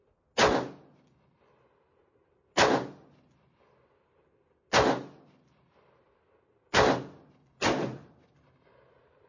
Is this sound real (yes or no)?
yes